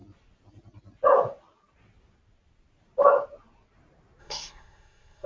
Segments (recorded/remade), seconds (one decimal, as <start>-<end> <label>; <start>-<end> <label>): 0.0-4.2 recorded; 4.2-5.3 remade